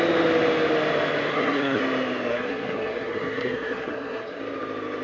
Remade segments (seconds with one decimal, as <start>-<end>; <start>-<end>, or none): 1.3-1.8; 2.3-4.4